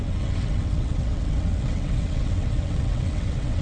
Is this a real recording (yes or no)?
no